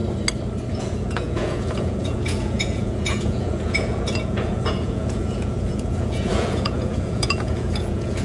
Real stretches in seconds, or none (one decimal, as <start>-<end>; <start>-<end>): 0.0-0.7